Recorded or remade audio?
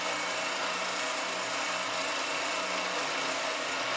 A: recorded